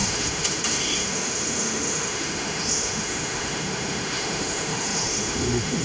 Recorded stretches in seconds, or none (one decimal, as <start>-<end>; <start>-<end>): none